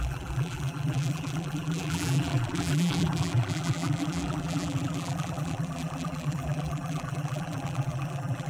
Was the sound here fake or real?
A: fake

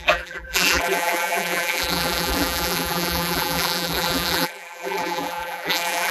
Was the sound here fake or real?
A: fake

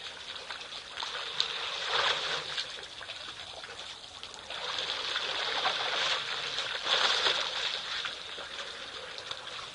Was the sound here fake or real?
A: real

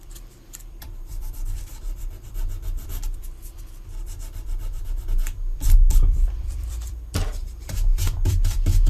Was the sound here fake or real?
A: fake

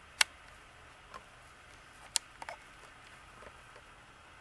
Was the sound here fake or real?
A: real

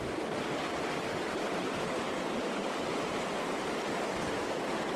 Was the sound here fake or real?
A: fake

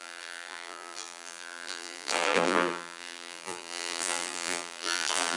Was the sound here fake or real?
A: fake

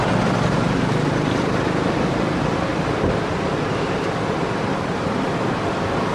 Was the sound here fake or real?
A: real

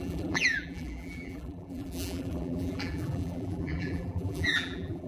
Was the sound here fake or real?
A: fake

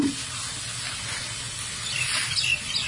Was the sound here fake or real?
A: fake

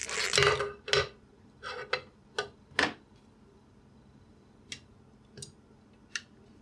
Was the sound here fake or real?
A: real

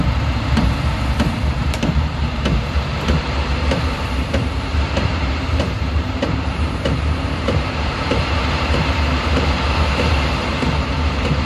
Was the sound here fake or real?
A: fake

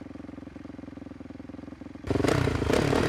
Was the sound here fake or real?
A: real